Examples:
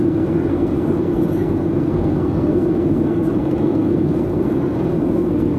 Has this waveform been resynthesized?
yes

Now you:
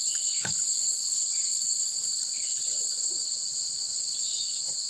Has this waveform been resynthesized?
yes